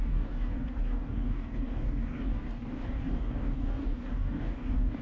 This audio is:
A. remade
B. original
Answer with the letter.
A